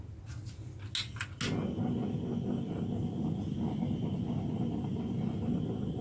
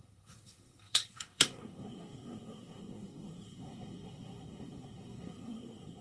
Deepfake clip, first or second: second